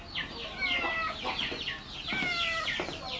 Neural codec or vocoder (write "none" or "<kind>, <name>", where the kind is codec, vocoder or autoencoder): none